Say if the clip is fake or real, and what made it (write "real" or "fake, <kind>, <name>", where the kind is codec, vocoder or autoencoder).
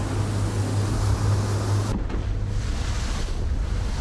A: real